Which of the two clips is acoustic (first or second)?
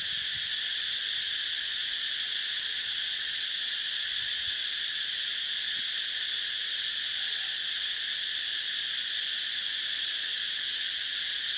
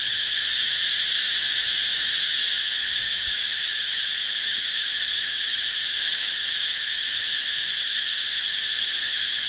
first